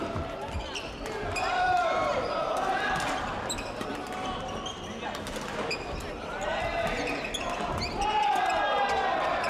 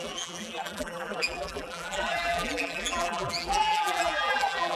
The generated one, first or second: second